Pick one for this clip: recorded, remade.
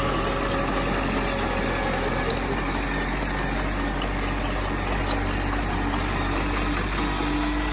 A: recorded